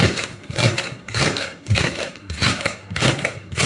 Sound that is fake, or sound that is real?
fake